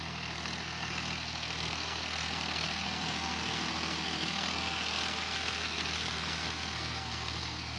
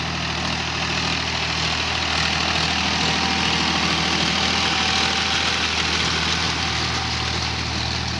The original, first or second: second